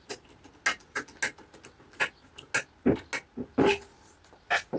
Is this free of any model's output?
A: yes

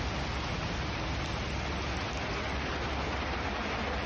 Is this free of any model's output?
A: yes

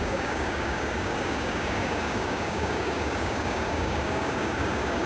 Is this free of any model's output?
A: no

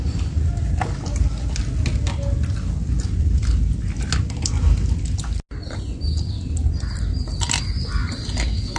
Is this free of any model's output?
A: yes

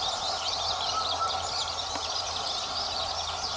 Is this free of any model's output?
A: yes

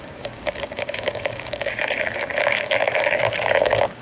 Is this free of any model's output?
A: no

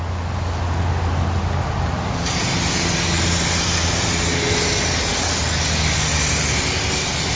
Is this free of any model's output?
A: yes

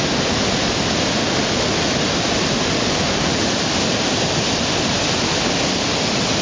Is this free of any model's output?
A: yes